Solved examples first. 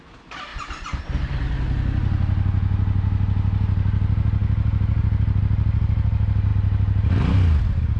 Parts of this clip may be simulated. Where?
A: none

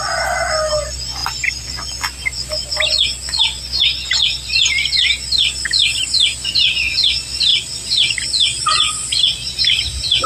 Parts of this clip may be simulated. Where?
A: none

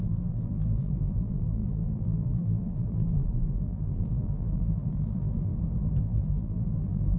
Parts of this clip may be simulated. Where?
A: 0.0-5.5 (vocoder, BigVGAN v2); 6.0-7.2

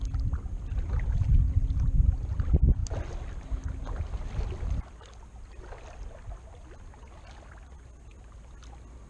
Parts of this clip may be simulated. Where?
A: none

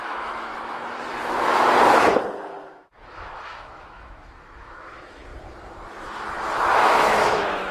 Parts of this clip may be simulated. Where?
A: 0.0-0.5 (autoencoder, DAC-VAE); 2.7-5.3; 6.7-7.7

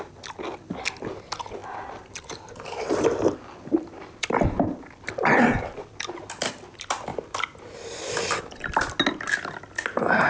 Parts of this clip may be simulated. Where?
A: 1.6-5.9 (vocoder, BigVGAN v2); 7.1-8.2

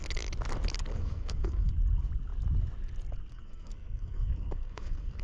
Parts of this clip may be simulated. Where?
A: 0.9-1.7 (codec, SNAC); 3.3-5.2